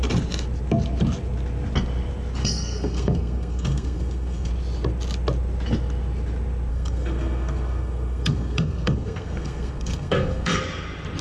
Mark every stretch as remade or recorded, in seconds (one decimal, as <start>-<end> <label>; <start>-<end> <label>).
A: 0.0-2.4 recorded; 2.4-4.5 remade; 4.5-6.7 recorded; 6.7-10.6 remade; 10.6-11.2 recorded